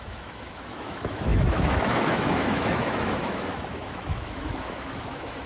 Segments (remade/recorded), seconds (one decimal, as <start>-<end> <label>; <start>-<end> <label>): 0.0-5.5 remade